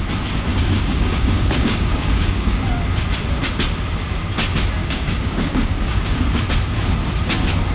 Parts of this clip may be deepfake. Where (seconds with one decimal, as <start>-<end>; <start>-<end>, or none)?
0.5-2.6; 4.8-6.4